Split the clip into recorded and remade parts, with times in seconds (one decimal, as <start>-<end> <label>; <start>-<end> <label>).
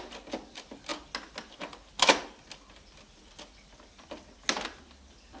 0.0-5.4 recorded